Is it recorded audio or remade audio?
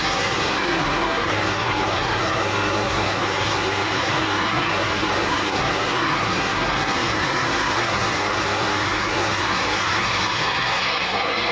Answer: remade